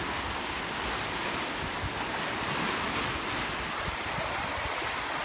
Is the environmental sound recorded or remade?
recorded